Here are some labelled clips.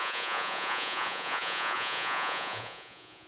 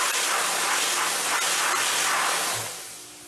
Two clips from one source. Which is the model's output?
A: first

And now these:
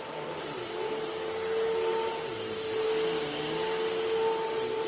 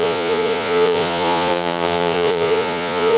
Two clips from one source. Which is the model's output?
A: second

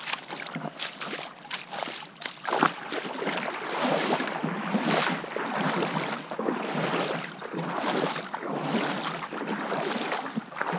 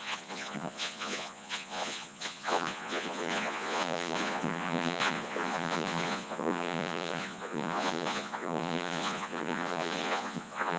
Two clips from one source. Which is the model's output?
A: second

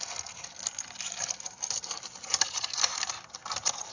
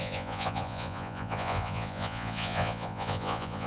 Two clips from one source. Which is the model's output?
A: second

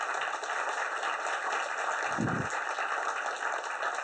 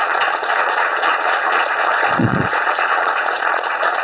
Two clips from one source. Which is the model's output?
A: second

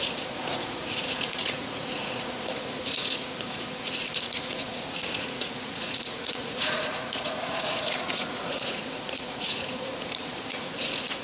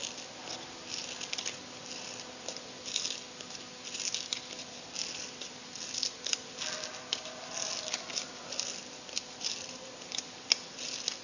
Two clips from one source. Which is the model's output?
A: first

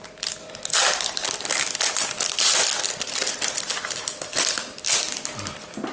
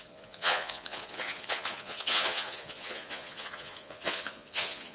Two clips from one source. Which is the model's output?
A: second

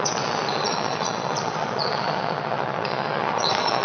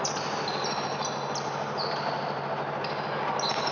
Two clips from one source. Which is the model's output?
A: first